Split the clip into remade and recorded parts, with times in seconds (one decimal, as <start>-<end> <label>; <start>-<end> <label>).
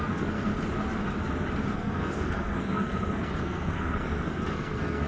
0.0-0.5 remade; 0.5-1.7 recorded; 1.7-5.1 remade